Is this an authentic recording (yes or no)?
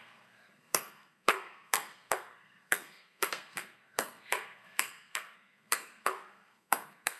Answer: no